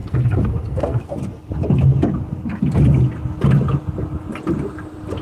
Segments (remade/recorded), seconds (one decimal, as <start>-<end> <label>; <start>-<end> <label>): 0.0-1.1 remade; 1.1-5.2 recorded